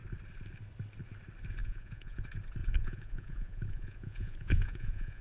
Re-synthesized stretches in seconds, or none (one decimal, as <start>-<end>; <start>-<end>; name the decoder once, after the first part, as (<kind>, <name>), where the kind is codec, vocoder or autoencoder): 1.6-2.2 (vocoder, Vocos); 2.6-5.2

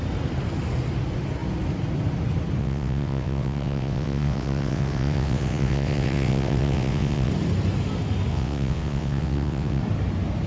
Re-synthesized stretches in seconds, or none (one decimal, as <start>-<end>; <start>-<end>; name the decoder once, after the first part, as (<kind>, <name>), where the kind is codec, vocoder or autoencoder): 2.6-7.3 (vocoder, WaveNeXt); 8.3-9.8

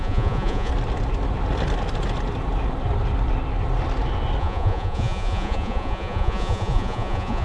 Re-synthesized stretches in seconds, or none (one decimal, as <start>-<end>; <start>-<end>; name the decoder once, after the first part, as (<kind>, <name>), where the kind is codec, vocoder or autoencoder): 0.0-0.7 (vocoder, Vocos); 4.4-7.4

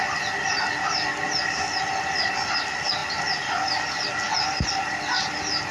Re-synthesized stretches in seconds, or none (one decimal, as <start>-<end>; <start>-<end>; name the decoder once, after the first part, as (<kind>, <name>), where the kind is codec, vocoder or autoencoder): none